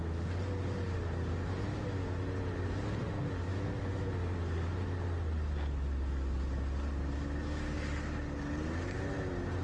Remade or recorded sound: recorded